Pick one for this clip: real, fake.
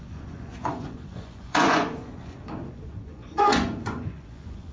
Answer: fake